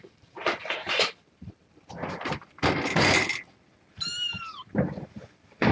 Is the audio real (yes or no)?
no